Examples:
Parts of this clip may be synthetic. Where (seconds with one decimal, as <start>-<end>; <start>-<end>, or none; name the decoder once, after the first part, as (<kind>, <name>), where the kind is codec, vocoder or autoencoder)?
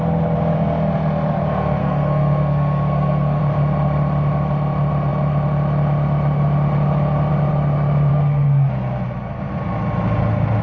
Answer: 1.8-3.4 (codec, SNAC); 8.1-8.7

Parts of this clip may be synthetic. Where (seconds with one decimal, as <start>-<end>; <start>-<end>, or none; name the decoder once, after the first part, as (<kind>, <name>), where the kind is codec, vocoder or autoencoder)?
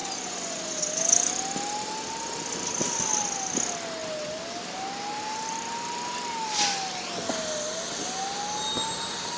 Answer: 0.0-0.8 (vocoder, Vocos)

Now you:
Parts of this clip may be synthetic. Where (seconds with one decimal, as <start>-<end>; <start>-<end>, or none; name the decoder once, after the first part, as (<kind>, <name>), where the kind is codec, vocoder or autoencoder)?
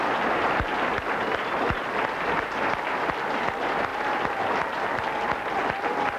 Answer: none